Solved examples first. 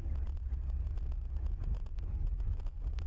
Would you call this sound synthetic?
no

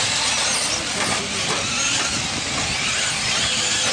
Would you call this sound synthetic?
no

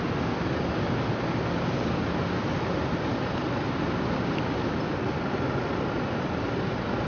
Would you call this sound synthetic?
no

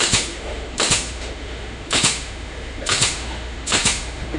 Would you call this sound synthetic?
yes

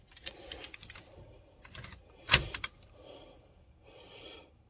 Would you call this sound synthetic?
no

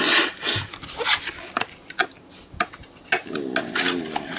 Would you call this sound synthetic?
no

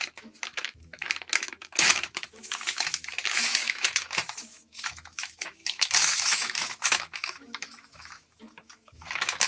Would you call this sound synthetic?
yes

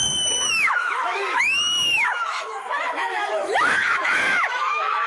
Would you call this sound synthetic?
yes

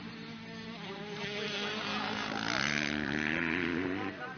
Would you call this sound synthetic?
no